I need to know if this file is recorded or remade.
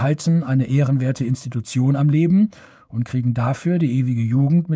remade